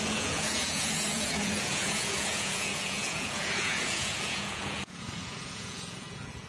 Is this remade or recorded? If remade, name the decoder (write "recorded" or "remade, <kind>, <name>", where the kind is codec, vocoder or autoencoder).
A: remade, vocoder, Vocos